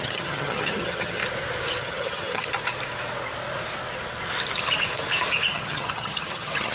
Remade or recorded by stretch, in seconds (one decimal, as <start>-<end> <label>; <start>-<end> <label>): 0.0-1.2 remade; 1.2-1.8 recorded; 1.8-2.5 remade; 2.5-5.5 recorded; 5.5-6.7 remade